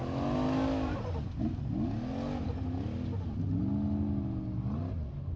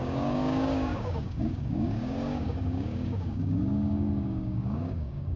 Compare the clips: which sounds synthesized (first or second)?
second